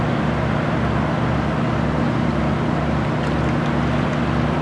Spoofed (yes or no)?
no